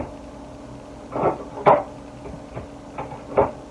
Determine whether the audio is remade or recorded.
recorded